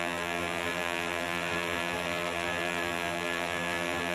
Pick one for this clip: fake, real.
fake